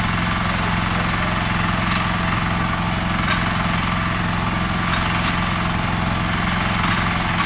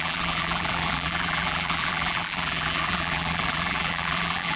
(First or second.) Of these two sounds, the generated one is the second